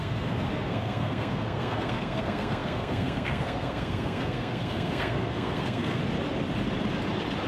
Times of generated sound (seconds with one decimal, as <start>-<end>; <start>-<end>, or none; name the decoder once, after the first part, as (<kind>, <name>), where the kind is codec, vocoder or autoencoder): 0.0-6.0 (codec, SNAC)